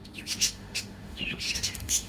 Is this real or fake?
fake